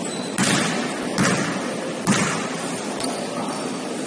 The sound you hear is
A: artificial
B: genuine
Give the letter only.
B